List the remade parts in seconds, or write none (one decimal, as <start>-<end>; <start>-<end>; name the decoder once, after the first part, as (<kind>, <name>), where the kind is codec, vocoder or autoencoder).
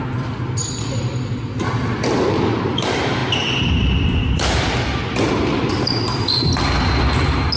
none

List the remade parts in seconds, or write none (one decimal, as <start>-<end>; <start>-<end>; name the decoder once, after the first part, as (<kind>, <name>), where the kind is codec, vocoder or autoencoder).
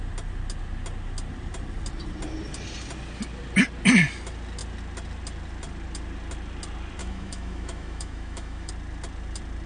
7.0-8.7 (autoencoder, DAC-VAE)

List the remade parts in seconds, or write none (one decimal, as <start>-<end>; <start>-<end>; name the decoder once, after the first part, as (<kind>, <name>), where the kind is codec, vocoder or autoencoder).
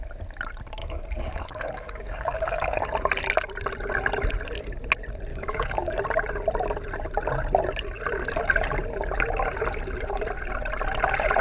0.8-2.8 (codec, DAC); 5.3-6.0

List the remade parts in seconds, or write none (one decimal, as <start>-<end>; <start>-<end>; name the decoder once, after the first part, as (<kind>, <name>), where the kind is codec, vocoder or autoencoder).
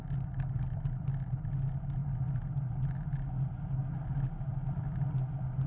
none